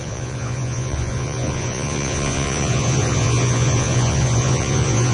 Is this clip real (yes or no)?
no